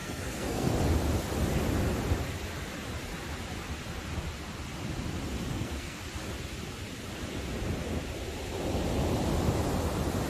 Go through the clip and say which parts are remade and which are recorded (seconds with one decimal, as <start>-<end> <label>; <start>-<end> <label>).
0.0-0.7 remade; 0.7-5.5 recorded; 5.5-6.0 remade; 6.0-10.3 recorded